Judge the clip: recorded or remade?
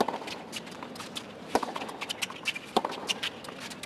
recorded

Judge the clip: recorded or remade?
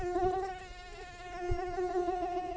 recorded